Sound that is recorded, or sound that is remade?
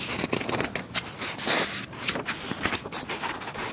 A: recorded